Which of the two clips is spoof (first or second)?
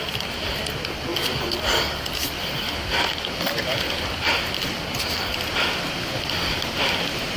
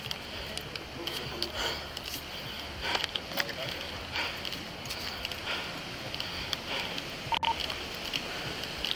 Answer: first